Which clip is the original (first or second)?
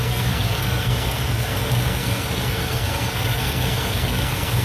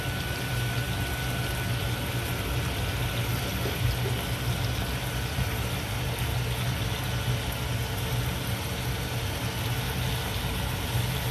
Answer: second